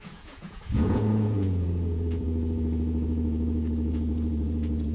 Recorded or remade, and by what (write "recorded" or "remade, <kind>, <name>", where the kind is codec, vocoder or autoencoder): remade, vocoder, Vocos